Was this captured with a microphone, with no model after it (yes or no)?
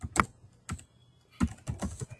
yes